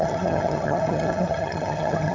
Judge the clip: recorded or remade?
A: remade